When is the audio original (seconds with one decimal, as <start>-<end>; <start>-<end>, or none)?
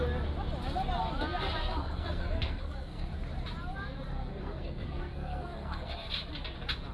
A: 0.0-1.6; 3.1-4.1; 6.1-6.9